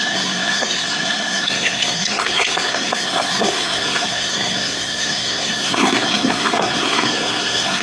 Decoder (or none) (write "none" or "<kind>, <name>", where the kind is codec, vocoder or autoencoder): codec, SNAC